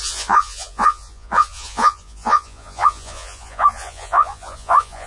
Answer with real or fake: fake